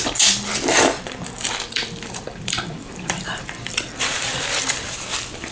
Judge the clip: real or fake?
fake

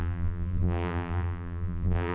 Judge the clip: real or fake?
fake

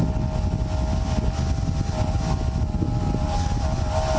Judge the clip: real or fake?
real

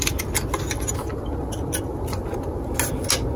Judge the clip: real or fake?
real